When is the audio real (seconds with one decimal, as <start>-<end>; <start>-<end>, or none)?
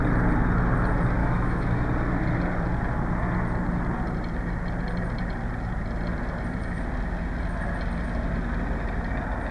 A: 0.0-1.2; 1.8-9.5